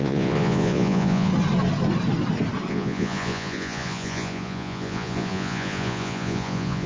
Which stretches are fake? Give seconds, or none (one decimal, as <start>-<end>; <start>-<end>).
0.0-1.3; 2.7-6.9

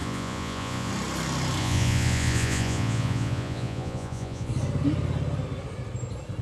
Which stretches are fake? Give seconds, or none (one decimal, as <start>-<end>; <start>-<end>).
0.0-0.9; 1.6-4.5

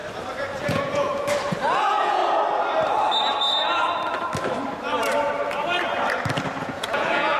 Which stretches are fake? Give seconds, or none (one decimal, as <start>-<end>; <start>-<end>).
0.6-1.1; 1.8-2.2; 6.6-7.4

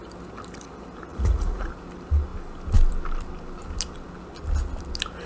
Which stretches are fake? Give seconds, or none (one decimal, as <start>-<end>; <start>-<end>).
1.1-1.7

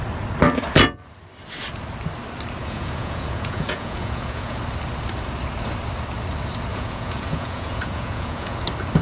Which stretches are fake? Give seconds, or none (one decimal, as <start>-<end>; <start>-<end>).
2.6-4.6; 6.7-8.6

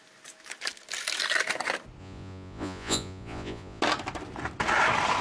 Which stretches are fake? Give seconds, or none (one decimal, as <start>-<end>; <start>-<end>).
2.0-3.8

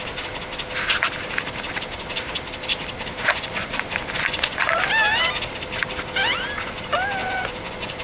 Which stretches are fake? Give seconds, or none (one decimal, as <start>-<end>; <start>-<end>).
3.2-4.9; 7.2-8.0